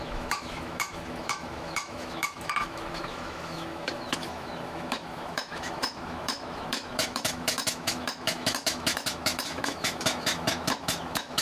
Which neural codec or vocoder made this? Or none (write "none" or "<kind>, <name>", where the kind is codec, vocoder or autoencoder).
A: autoencoder, DAC-VAE